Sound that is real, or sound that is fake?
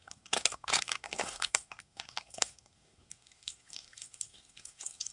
fake